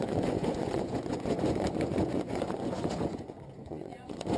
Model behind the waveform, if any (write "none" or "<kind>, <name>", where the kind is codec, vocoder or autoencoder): vocoder, Vocos